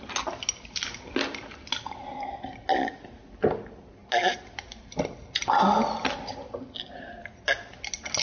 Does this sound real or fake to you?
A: real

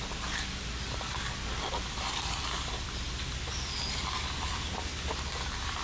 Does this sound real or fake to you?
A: real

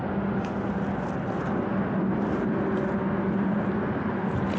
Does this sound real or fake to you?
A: real